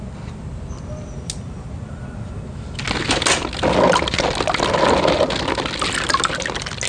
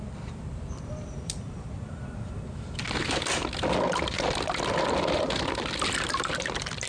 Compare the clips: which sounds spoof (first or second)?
second